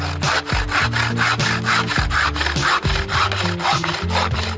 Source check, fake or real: real